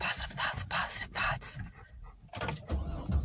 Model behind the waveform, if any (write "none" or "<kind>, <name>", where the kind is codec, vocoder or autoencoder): none